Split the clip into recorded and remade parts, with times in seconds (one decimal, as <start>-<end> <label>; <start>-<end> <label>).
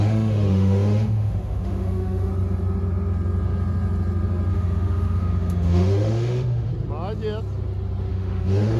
0.0-2.3 remade; 2.3-4.5 recorded; 4.5-6.7 remade; 6.7-8.1 recorded; 8.1-8.8 remade